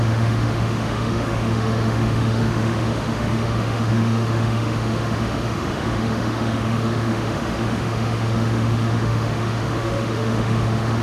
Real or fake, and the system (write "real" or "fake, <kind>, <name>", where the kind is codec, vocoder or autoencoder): fake, autoencoder, DAC-VAE